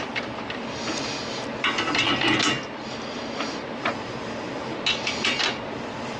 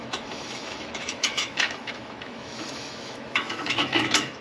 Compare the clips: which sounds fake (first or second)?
second